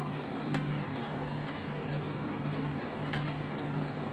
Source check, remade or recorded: remade